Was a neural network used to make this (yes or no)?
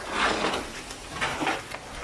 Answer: no